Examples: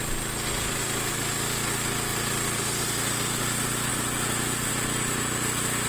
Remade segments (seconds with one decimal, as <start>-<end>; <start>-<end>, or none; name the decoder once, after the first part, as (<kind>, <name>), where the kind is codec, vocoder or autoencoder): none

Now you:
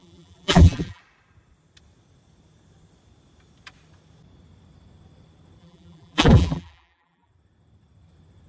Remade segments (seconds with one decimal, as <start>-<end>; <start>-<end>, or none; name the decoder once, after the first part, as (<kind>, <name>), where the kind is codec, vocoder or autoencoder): 0.0-1.0 (vocoder, BigVGAN v2); 5.6-7.3

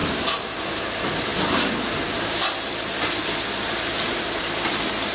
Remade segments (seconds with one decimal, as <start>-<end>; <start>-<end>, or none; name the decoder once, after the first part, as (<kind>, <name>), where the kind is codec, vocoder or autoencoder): 0.0-0.6 (vocoder, BigVGAN v2)